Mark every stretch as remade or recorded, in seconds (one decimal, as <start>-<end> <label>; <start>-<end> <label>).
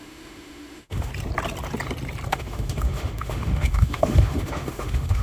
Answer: 0.0-1.1 remade; 1.1-2.3 recorded; 2.3-5.2 remade